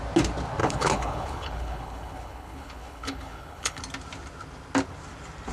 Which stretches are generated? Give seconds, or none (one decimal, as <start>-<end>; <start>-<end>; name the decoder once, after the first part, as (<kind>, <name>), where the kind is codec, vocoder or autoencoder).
0.6-3.8 (codec, HILCodec)